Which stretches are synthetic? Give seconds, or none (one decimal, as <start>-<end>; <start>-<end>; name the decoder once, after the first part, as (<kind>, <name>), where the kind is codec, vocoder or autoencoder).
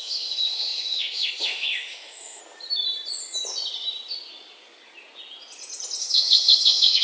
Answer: 0.0-2.4 (autoencoder, DAC-VAE); 6.0-7.0